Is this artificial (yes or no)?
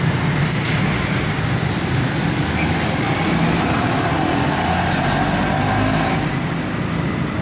no